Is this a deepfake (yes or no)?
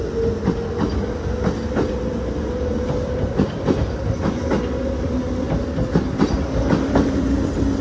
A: no